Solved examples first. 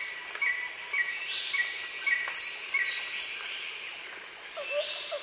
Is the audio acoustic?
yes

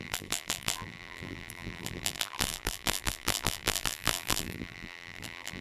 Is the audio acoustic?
no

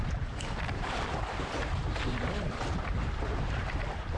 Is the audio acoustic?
no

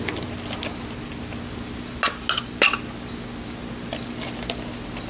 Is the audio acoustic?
yes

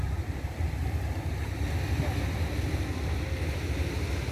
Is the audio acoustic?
yes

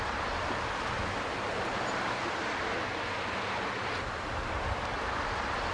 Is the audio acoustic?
yes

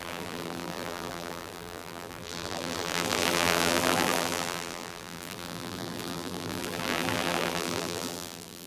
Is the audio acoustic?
no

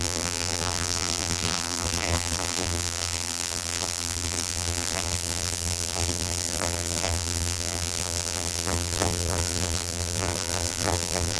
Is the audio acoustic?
no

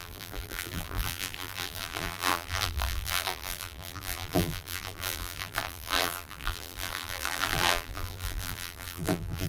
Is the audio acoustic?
no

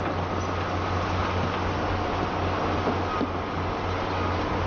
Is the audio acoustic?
yes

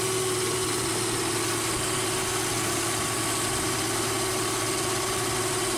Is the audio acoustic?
yes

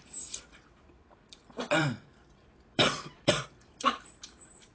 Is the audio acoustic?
no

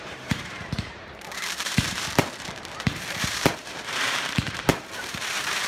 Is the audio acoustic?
no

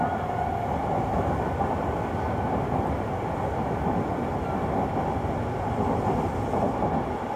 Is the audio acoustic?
yes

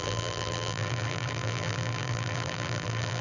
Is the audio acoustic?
no